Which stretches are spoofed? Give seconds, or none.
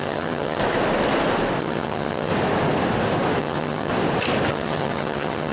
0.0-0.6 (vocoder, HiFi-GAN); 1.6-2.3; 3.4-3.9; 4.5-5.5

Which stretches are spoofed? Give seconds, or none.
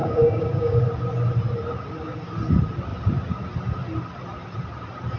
0.0-0.8 (codec, DAC)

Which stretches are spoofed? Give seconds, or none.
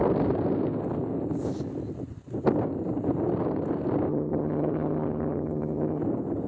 4.1-6.0 (vocoder, HiFi-GAN)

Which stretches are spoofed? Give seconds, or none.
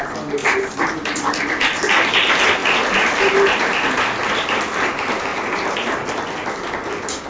none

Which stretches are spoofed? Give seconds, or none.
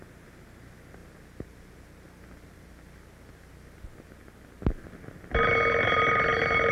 none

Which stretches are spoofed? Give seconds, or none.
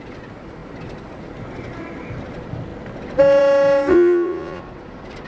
3.9-4.6 (vocoder, Vocos)